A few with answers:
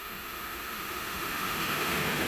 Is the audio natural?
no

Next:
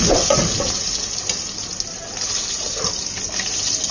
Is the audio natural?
yes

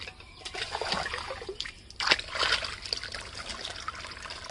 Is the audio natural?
yes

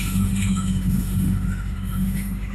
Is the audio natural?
no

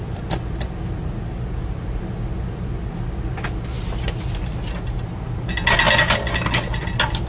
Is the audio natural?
yes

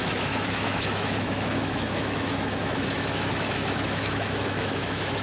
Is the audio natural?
no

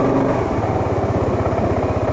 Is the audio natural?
yes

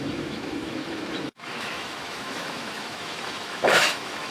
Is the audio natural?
no